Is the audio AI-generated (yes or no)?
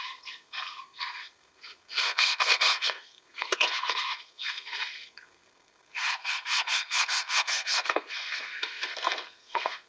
yes